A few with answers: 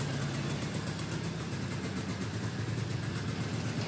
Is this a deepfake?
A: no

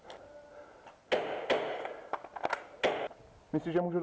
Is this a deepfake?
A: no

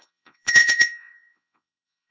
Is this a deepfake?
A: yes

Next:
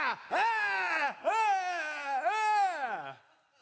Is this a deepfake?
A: no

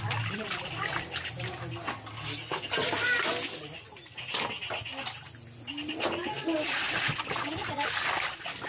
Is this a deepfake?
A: no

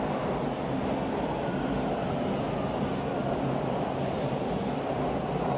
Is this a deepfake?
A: no